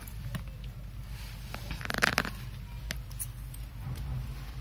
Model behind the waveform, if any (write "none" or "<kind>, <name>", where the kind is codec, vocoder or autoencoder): none